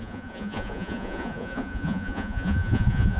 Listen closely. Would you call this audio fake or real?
fake